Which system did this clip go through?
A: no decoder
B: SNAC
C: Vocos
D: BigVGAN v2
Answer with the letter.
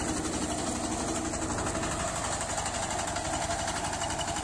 A